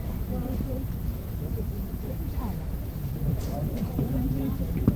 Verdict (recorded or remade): remade